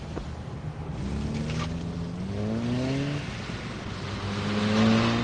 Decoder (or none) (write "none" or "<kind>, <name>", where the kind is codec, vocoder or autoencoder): none